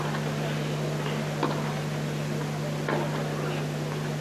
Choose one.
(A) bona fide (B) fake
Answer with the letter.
A